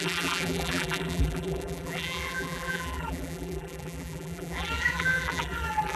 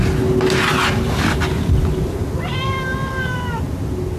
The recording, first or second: second